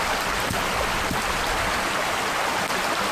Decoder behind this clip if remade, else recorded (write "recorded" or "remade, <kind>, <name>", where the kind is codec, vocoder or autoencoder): recorded